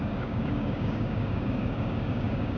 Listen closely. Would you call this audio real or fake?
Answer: fake